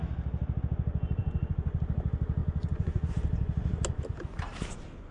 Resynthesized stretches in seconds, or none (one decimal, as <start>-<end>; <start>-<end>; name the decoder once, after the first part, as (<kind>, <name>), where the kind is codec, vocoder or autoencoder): 1.2-1.8 (vocoder, Vocos); 2.4-3.1

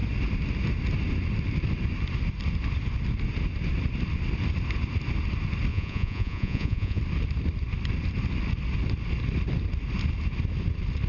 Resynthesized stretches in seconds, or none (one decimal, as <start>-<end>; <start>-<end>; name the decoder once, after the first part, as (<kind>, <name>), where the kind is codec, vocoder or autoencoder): 5.7-7.0 (vocoder, Vocos)

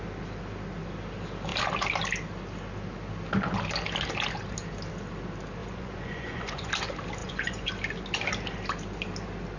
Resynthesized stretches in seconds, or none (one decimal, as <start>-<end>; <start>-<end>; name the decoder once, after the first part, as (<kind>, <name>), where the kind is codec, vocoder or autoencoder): 5.6-6.7 (vocoder, Vocos); 7.2-7.7